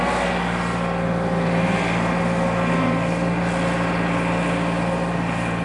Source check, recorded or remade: recorded